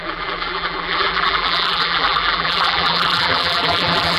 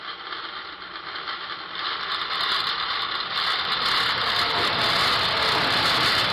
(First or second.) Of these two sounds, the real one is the second